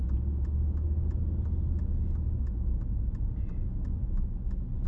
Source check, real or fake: real